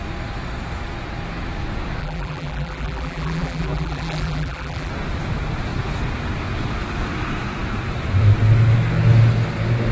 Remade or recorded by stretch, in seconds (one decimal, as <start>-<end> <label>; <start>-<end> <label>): 0.0-2.0 recorded; 2.0-4.9 remade; 4.9-9.9 recorded